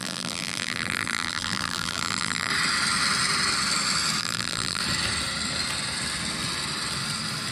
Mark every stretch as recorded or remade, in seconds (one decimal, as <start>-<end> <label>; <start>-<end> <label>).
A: 0.0-2.5 remade; 2.5-4.2 recorded; 4.2-4.8 remade; 4.8-7.5 recorded